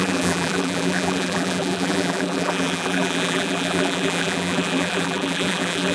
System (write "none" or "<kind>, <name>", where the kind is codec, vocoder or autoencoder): vocoder, BigVGAN v2